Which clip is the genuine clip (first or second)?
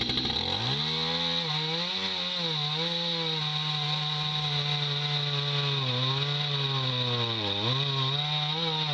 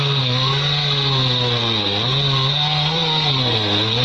first